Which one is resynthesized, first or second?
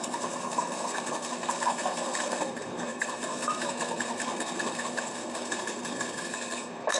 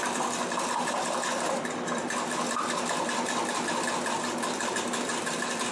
first